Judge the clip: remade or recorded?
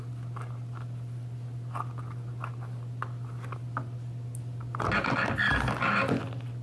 recorded